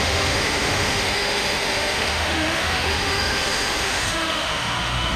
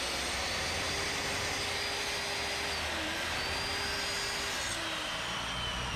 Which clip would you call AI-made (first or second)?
first